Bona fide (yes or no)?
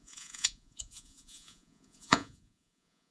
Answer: no